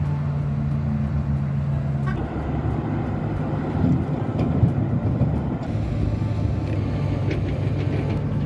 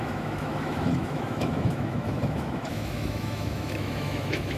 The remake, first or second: second